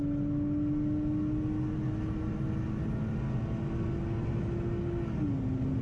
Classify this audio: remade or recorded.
recorded